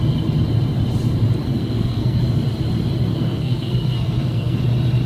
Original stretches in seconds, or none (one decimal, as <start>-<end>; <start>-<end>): 0.0-1.4; 2.2-3.1; 4.6-5.1